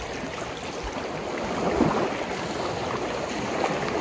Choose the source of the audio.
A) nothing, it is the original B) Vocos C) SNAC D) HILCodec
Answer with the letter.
A